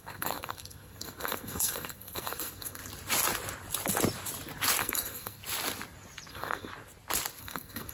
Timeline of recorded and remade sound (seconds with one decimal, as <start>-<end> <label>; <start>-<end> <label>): 0.0-2.8 remade; 2.8-4.8 recorded; 4.8-5.4 remade; 5.4-6.3 recorded; 6.3-6.7 remade; 6.7-7.4 recorded; 7.4-7.9 remade